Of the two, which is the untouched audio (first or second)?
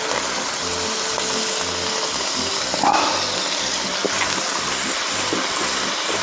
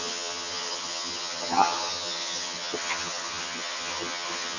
first